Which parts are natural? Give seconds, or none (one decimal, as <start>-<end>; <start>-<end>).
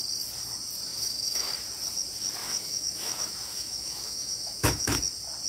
0.0-0.9; 1.5-2.4; 5.0-5.5